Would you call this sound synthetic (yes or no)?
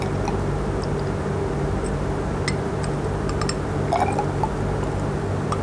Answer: no